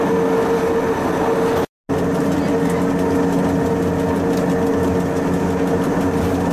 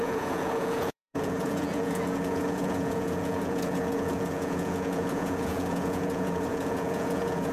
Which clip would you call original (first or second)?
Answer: first